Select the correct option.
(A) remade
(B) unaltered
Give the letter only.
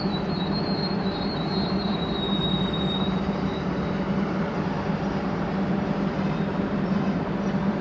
A